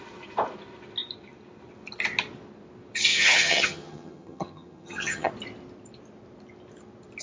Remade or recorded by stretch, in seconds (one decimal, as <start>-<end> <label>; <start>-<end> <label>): 0.0-3.1 recorded; 3.1-5.3 remade; 5.3-7.2 recorded